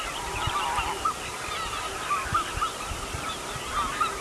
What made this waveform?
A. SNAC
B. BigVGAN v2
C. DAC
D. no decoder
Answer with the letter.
D